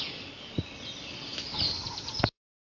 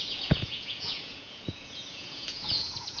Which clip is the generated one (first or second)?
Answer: second